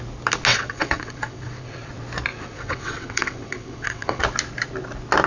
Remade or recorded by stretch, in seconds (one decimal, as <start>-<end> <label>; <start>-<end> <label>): 0.0-0.5 recorded; 0.5-1.9 remade; 1.9-2.3 recorded; 2.3-4.2 remade; 4.2-5.3 recorded